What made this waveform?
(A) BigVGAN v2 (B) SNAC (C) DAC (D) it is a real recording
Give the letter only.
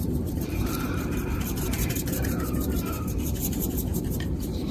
A